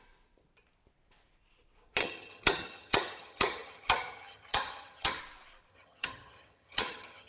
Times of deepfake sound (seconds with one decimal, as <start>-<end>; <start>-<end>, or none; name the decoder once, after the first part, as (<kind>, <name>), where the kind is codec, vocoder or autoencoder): 2.0-5.2 (vocoder, HiFi-GAN); 5.7-7.3